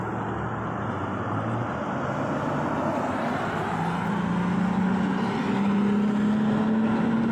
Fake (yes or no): no